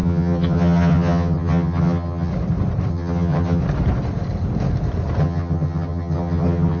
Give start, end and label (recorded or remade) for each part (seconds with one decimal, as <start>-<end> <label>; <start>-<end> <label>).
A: 0.0-2.3 remade; 2.3-2.9 recorded; 2.9-3.6 remade; 3.6-5.2 recorded; 5.2-6.8 remade